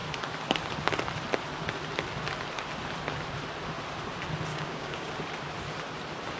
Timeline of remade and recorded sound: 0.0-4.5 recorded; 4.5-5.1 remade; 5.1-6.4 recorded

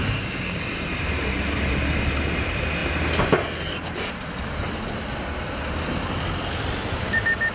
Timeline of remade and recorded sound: 0.0-0.6 remade; 0.6-7.5 recorded